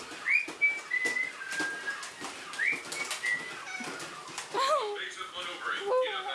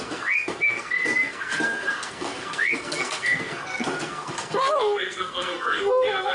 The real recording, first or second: first